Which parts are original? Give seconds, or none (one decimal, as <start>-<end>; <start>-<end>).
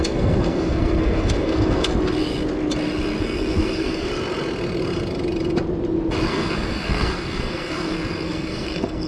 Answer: 1.9-3.2; 4.1-6.3